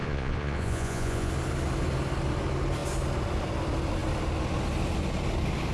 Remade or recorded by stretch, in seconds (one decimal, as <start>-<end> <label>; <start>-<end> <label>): 0.0-1.3 remade; 1.3-5.7 recorded